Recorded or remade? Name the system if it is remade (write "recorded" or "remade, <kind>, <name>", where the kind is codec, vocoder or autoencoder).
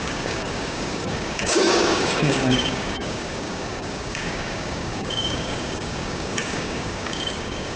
remade, codec, DAC